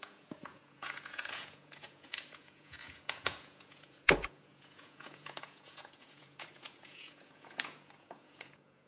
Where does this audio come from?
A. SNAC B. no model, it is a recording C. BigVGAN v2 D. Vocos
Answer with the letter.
D